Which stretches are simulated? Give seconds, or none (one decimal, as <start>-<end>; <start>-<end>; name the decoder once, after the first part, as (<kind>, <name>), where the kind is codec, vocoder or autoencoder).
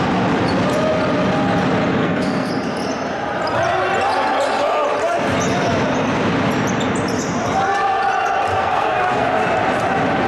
2.0-2.5 (codec, SNAC); 8.5-9.4